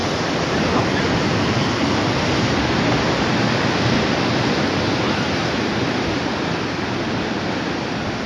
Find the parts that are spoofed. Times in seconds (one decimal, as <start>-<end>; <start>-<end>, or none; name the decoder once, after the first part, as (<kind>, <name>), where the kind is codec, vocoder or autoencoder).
none